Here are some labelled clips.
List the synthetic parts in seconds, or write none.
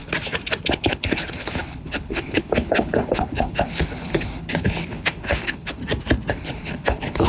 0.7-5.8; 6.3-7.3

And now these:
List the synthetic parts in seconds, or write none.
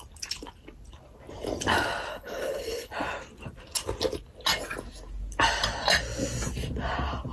2.1-2.9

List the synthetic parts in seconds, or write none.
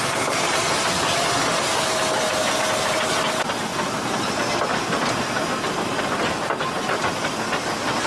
none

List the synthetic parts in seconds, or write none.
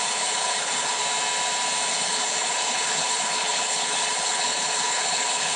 0.0-1.0; 1.9-5.6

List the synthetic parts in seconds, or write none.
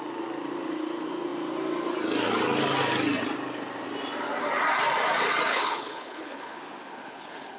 5.5-6.6; 7.0-7.6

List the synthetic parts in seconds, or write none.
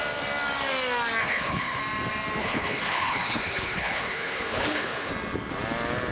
1.2-1.8; 2.4-5.1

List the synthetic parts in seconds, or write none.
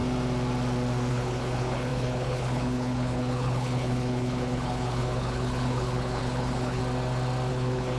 1.1-6.8; 7.5-8.0